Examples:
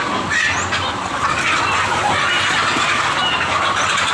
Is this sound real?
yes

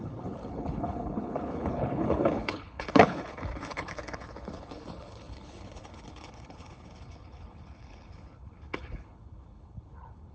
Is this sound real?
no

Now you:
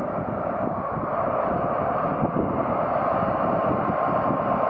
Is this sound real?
yes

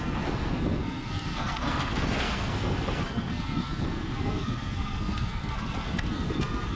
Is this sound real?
no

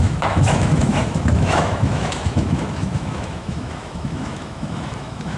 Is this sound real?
no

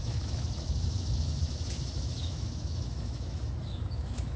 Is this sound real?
no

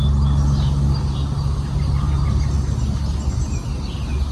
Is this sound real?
yes